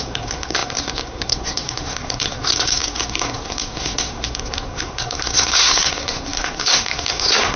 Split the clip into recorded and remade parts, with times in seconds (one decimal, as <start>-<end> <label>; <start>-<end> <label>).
0.0-7.6 remade